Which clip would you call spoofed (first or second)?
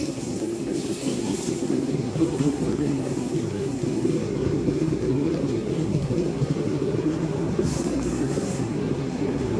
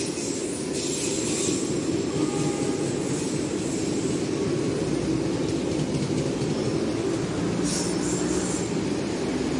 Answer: first